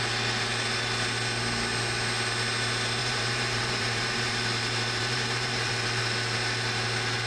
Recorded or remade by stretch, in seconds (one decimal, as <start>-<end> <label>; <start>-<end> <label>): 0.0-3.0 recorded; 3.0-5.7 remade; 5.7-7.3 recorded